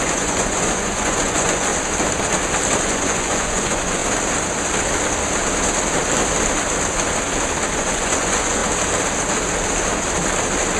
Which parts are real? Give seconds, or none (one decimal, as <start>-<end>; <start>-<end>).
1.7-2.8; 4.0-7.7; 8.6-10.8